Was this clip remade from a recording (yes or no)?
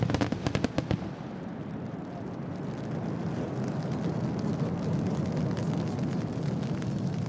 no